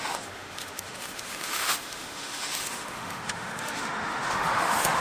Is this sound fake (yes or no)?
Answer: yes